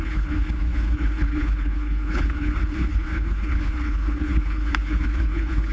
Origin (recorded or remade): remade